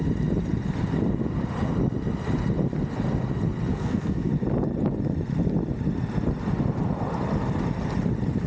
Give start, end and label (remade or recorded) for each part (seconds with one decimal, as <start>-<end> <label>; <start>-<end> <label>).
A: 0.0-3.7 recorded; 3.7-4.3 remade; 4.3-8.5 recorded

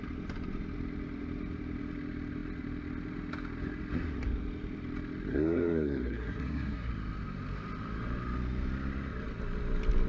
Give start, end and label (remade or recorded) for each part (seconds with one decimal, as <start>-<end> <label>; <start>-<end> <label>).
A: 0.0-5.3 recorded; 5.3-6.9 remade; 6.9-10.1 recorded